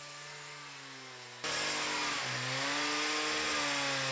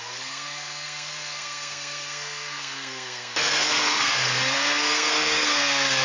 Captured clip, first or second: first